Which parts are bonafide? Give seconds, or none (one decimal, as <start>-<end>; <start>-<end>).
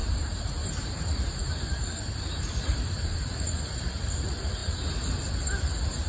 3.1-6.1